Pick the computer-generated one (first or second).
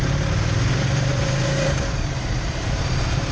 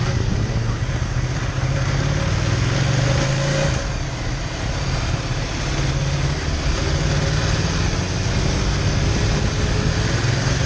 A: first